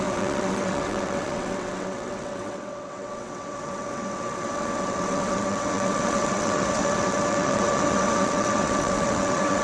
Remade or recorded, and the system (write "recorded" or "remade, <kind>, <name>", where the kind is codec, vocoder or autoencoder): remade, vocoder, WaveNeXt